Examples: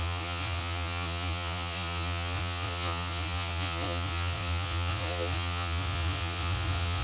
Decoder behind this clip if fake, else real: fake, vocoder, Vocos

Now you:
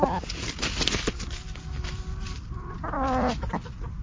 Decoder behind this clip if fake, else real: real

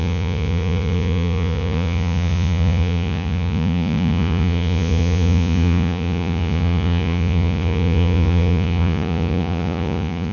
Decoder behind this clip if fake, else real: fake, vocoder, Vocos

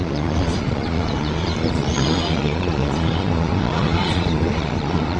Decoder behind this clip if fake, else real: fake, vocoder, Vocos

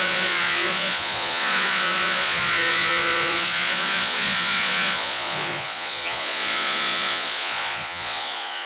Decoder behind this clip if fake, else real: fake, vocoder, Vocos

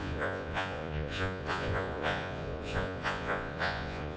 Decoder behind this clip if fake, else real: fake, vocoder, Vocos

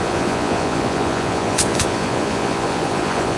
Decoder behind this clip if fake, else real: fake, vocoder, Vocos